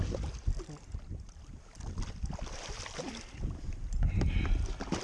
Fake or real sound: real